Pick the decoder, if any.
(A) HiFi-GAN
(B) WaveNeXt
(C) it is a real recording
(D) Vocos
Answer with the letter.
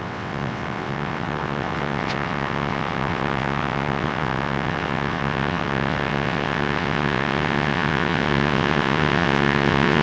B